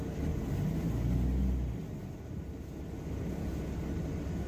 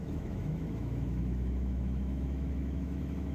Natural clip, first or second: first